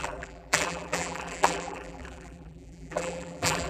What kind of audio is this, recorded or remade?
remade